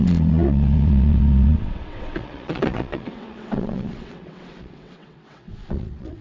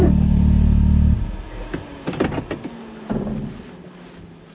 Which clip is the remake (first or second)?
first